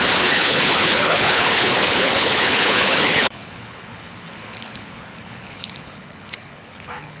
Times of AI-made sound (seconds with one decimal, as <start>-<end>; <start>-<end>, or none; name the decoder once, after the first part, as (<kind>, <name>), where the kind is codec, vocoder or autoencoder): 0.0-7.2 (codec, HILCodec)